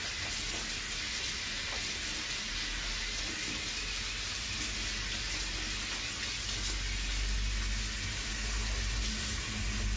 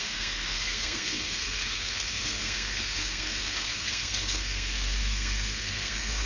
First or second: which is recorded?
first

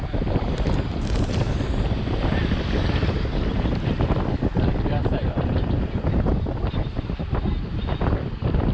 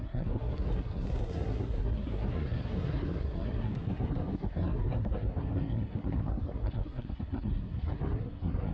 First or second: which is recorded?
first